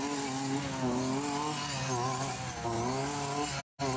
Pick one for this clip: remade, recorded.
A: recorded